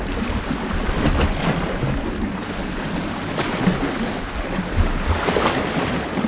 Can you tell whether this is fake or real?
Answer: real